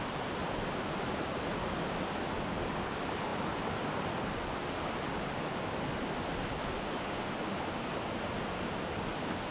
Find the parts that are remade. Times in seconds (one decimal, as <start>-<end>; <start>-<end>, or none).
none